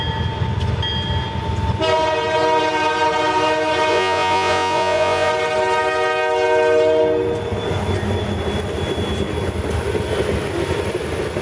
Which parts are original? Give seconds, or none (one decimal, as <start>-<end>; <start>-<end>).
0.0-3.9; 5.3-11.4